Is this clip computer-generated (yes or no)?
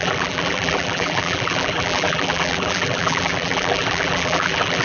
yes